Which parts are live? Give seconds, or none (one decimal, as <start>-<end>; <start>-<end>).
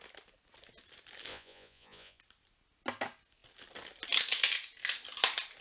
0.0-1.3; 2.2-5.6